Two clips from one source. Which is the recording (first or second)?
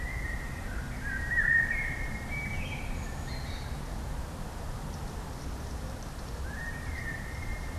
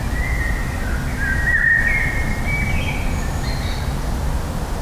second